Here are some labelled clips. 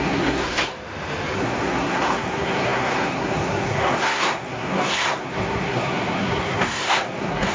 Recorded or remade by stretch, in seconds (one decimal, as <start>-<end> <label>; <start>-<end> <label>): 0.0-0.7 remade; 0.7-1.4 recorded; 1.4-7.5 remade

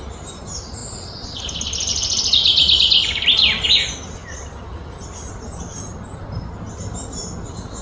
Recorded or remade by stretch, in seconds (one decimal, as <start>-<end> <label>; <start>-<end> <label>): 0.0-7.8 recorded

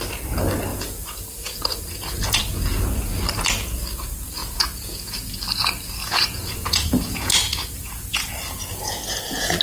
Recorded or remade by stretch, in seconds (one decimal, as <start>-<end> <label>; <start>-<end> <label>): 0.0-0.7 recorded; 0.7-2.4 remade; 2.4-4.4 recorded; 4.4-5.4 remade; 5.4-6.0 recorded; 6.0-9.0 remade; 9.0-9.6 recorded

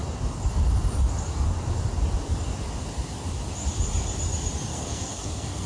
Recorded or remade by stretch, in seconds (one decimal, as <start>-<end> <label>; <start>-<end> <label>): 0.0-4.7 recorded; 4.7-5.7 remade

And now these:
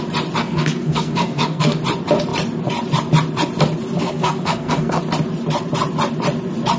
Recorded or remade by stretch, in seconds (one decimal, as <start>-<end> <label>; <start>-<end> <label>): 0.0-0.4 recorded; 0.4-1.8 remade; 1.8-4.0 recorded; 4.0-5.0 remade; 5.0-6.8 recorded

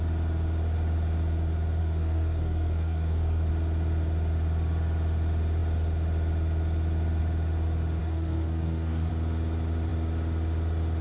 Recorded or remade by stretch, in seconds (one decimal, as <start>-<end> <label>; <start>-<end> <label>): 0.0-1.8 recorded; 1.8-3.5 remade; 3.5-8.0 recorded; 8.0-9.1 remade; 9.1-11.0 recorded